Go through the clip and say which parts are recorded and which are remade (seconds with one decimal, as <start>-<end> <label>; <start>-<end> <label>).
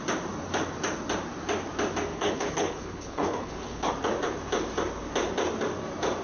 0.0-2.1 recorded; 2.1-3.9 remade; 3.9-6.2 recorded